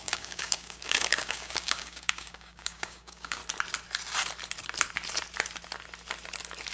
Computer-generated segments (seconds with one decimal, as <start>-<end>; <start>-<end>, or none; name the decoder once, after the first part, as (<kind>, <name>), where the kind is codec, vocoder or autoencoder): 0.0-3.4 (codec, DAC)